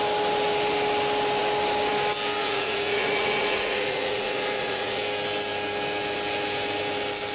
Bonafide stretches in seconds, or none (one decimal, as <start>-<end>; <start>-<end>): 0.0-2.4; 5.0-7.3